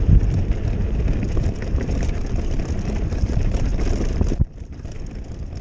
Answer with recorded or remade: remade